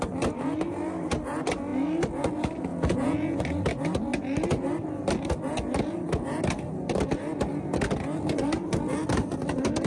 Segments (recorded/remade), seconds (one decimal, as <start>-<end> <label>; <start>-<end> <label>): 0.0-2.7 recorded; 2.7-3.4 remade; 3.4-9.9 recorded